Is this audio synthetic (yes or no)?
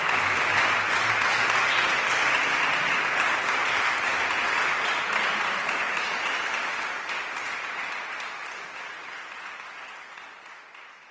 no